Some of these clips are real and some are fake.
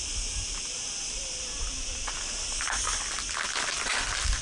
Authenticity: real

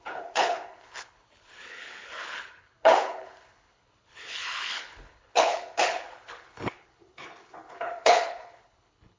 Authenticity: fake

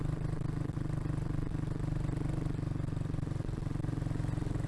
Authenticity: real